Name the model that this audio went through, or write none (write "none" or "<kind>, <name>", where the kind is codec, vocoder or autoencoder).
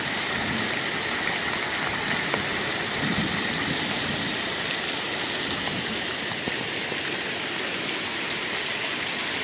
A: none